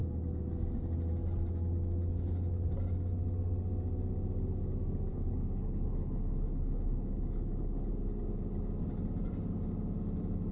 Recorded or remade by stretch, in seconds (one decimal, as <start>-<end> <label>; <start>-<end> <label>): 0.0-5.1 recorded; 5.1-7.9 remade; 7.9-10.5 recorded